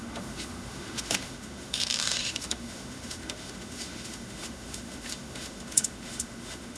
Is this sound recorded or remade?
remade